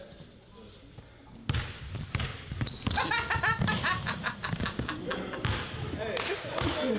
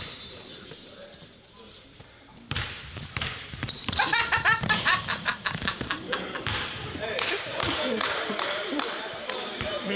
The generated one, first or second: second